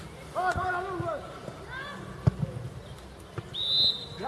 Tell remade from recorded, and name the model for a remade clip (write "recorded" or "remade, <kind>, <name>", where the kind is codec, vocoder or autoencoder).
recorded